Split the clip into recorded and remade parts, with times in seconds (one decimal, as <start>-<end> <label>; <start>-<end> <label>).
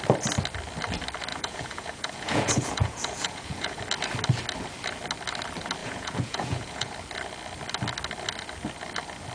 0.0-1.3 recorded; 1.3-3.8 remade; 3.8-5.8 recorded; 5.8-6.9 remade; 6.9-9.3 recorded